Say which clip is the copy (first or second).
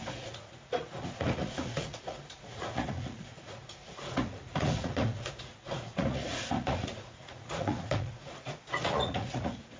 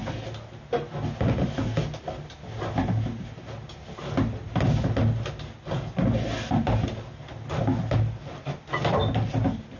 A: first